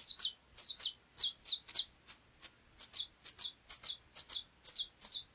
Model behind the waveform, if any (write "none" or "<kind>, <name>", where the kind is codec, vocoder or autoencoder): none